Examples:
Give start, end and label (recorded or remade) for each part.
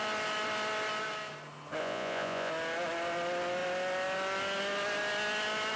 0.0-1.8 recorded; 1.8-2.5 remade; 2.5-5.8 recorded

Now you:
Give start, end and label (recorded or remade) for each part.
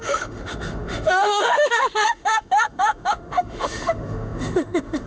0.0-5.1 remade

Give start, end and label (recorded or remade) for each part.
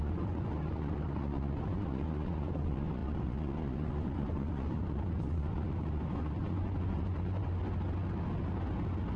0.0-7.5 remade; 7.5-9.2 recorded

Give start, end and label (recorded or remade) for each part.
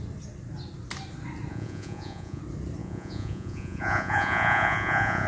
0.0-1.5 recorded; 1.5-2.4 remade; 2.4-2.8 recorded; 2.8-5.3 remade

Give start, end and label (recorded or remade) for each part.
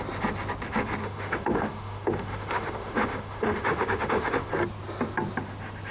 0.0-1.0 recorded; 1.0-4.5 remade; 4.5-5.9 recorded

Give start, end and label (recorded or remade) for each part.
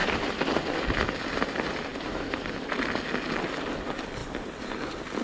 0.0-5.2 recorded